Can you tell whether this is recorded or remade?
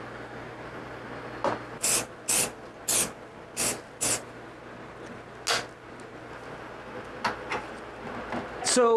recorded